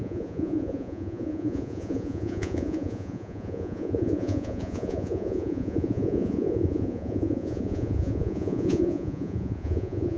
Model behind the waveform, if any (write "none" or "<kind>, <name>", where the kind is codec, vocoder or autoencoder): vocoder, Vocos